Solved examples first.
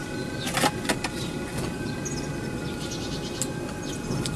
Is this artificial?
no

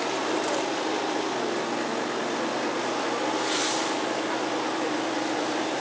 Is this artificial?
no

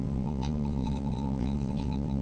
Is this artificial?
yes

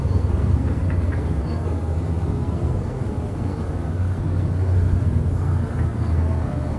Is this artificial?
yes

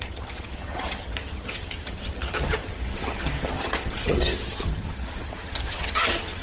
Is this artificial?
yes